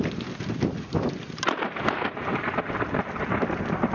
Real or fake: real